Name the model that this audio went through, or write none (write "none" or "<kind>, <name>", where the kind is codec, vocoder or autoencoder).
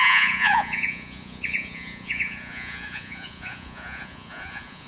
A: vocoder, Vocos